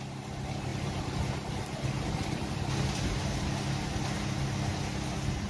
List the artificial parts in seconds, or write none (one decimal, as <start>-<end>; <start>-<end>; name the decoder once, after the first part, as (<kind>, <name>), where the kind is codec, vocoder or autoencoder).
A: none